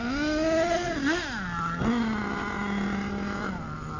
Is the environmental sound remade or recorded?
recorded